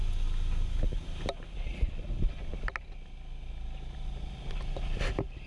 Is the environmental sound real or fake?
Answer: real